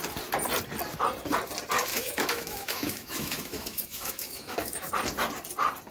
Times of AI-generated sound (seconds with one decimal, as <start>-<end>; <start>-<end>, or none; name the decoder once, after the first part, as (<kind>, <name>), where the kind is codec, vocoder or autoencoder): 1.9-4.9 (autoencoder, DAC-VAE)

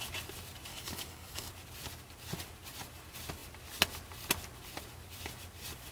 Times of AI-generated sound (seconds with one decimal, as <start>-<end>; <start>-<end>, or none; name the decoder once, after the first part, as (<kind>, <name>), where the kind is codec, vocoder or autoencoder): 0.7-1.5 (codec, DAC)

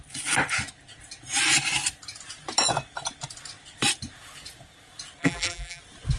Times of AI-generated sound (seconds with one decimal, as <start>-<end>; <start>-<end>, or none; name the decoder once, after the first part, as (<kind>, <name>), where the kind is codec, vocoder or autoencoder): 5.2-5.8 (vocoder, BigVGAN v2)

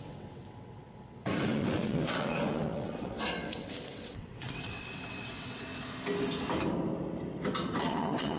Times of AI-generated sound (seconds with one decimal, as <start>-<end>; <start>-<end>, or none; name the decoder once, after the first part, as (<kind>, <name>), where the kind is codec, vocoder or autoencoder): 0.0-5.7 (vocoder, WaveNeXt); 7.8-8.4

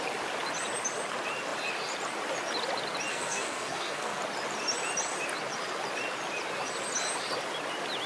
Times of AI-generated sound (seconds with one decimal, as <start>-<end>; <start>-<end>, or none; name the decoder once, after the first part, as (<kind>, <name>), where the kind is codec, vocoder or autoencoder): 3.1-4.2 (codec, SNAC)